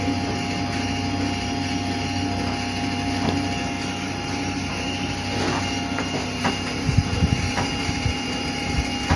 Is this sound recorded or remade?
recorded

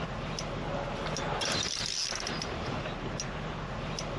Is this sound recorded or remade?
recorded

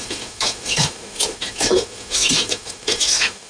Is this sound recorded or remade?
remade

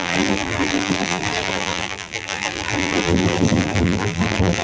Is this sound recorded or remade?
remade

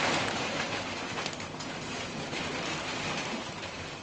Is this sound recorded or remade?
recorded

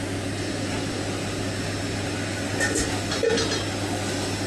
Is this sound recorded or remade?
recorded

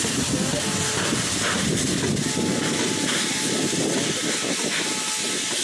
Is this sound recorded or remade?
recorded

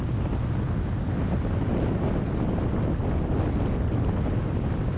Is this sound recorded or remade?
recorded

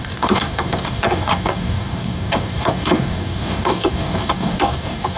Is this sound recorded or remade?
remade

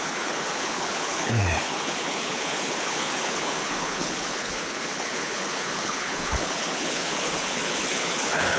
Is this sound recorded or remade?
remade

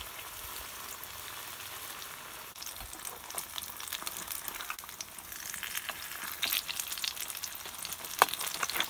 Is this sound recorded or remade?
recorded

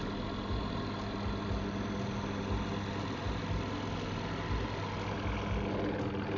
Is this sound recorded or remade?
recorded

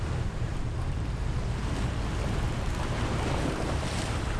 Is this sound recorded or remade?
remade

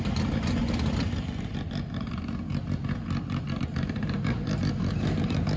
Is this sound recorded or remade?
remade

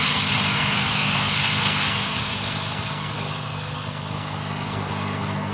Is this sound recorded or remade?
remade